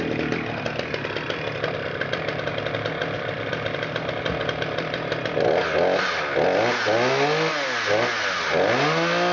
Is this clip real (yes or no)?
yes